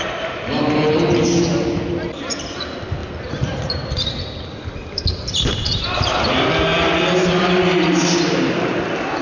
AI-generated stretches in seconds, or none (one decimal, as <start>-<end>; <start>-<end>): 3.0-6.5